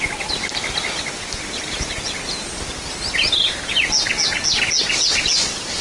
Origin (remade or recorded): recorded